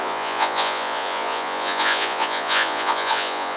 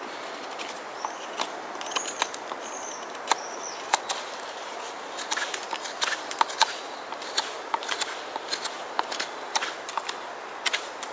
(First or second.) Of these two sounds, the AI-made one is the first